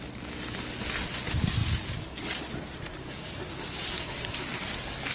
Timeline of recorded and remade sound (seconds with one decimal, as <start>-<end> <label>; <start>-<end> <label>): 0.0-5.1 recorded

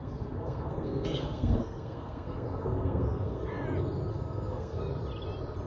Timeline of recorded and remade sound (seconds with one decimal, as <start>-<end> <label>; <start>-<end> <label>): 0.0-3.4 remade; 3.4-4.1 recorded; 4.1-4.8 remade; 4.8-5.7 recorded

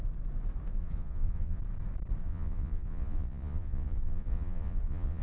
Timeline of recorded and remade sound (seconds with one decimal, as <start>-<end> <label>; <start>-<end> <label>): 0.0-0.8 recorded; 0.8-1.6 remade; 1.6-2.2 recorded; 2.2-5.2 remade

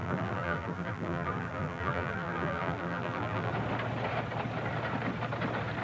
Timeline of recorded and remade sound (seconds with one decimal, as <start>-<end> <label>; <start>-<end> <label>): 0.0-3.5 remade; 3.5-5.8 recorded